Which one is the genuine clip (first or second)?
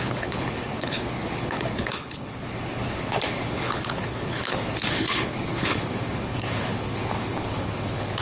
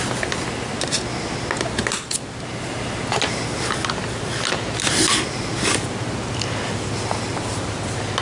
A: second